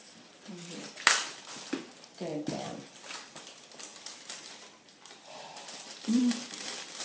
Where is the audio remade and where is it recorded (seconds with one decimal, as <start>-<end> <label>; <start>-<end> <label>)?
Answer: 0.0-0.5 remade; 0.5-2.3 recorded; 2.3-3.4 remade; 3.4-3.9 recorded; 3.9-6.3 remade; 6.3-7.0 recorded